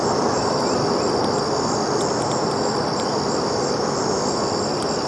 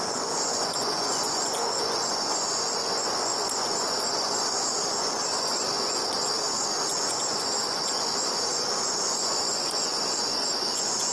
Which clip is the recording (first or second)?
first